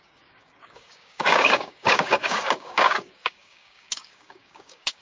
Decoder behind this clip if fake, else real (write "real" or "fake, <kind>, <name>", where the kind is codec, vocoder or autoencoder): fake, codec, DAC